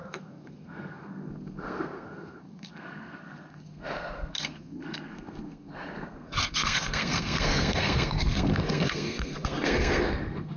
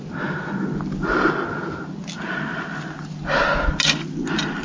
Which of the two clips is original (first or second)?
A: second